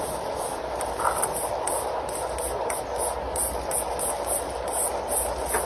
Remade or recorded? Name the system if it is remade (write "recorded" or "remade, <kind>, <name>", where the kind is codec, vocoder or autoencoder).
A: recorded